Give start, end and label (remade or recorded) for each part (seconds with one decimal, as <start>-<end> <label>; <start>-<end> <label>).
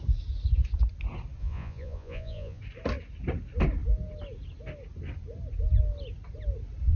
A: 0.0-1.4 recorded; 1.4-2.6 remade; 2.6-7.0 recorded